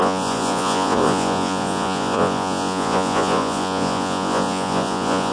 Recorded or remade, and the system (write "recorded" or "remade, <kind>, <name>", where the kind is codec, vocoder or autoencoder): remade, vocoder, Vocos